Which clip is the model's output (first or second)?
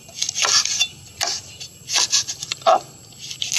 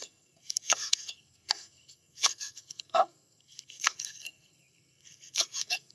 second